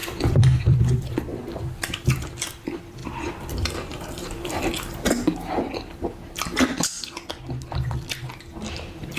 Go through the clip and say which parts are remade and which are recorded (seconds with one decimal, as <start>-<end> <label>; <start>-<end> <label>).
0.0-0.8 remade; 0.8-1.3 recorded; 1.3-2.4 remade; 2.4-3.0 recorded; 3.0-4.7 remade; 4.7-9.2 recorded